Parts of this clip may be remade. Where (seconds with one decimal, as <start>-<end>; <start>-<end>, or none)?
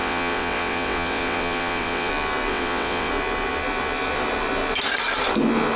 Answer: 0.0-2.1; 2.5-3.1